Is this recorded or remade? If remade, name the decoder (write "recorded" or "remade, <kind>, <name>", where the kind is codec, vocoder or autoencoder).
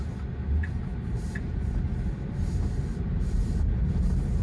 recorded